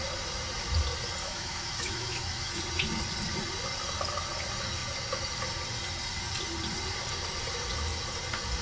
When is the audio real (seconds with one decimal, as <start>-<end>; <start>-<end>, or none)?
0.0-1.2; 2.6-8.6